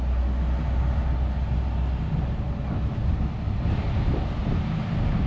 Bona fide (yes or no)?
yes